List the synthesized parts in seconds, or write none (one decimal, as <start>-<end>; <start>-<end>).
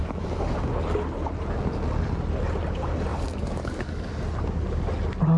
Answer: 3.1-4.1